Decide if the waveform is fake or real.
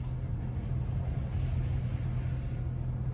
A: real